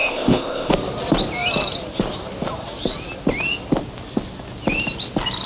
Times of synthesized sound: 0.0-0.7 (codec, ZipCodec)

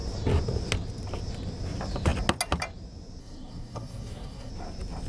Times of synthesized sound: 3.2-4.5 (codec, SNAC)

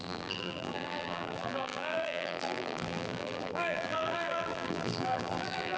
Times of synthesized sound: 0.0-5.8 (vocoder, BigVGAN v2)

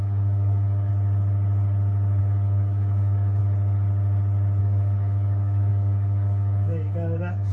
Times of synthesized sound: 0.0-0.9 (codec, DAC); 2.2-3.4; 4.6-7.5

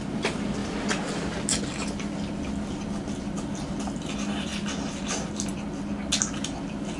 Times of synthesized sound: none

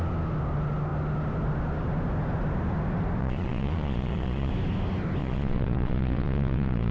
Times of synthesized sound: 3.2-4.5 (vocoder, Vocos); 5.2-6.9

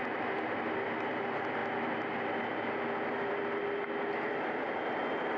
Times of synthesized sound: none

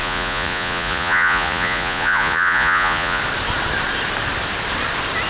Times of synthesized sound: 0.0-3.2 (vocoder, Vocos)